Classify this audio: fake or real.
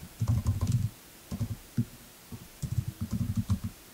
fake